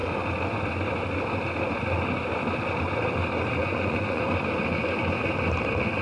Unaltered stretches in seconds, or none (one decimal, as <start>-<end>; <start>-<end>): 0.0-3.6; 4.3-6.0

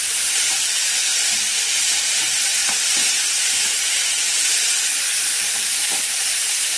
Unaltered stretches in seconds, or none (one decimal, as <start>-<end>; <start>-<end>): 1.1-1.8

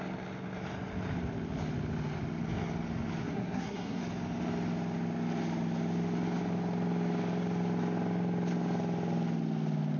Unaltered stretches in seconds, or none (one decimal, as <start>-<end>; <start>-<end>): 0.0-3.2; 4.0-10.0

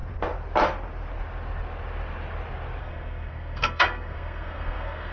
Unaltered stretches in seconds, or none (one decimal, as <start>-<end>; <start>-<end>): 0.0-2.8

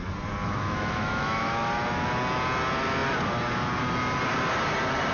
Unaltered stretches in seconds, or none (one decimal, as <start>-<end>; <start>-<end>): 0.0-0.4; 1.7-5.1